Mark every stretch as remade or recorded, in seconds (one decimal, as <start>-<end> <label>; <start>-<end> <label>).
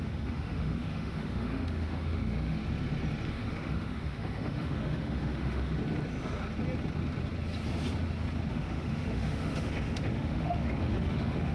0.0-2.6 remade; 2.6-3.3 recorded; 3.3-5.8 remade; 5.8-8.5 recorded; 8.5-11.5 remade